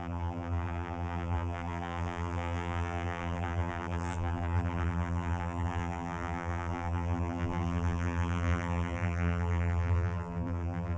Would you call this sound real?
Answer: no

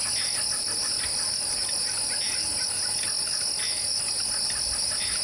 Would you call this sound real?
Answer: yes